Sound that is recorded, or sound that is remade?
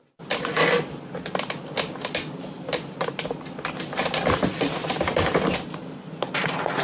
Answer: recorded